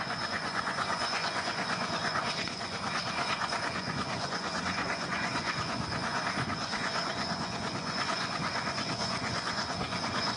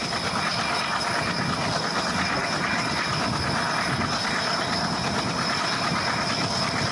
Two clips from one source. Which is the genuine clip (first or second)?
second